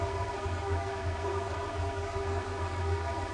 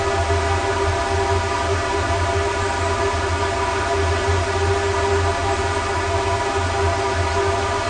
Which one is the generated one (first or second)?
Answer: first